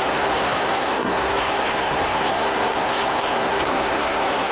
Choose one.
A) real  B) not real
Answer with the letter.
B